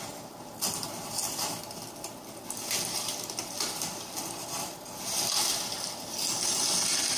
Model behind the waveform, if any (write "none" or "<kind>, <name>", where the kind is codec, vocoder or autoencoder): none